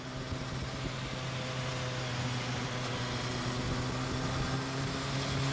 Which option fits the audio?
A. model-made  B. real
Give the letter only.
B